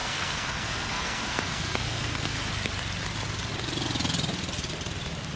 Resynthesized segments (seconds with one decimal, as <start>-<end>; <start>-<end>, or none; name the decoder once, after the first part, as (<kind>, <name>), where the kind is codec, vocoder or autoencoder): 0.0-2.4 (codec, SNAC)